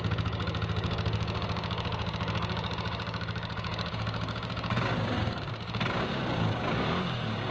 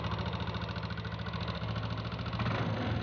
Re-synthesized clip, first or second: first